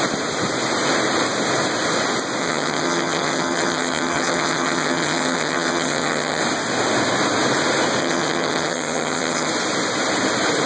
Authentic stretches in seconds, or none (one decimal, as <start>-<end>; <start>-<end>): 0.0-2.4; 6.4-8.0; 9.5-10.7